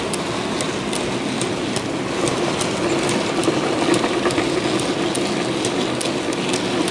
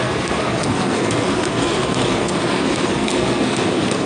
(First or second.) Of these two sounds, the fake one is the second